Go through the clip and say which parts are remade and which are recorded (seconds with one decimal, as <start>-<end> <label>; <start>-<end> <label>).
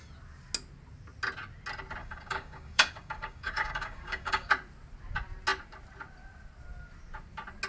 0.0-2.0 recorded; 2.0-4.5 remade; 4.5-7.7 recorded